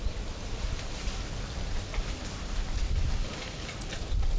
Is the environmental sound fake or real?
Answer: real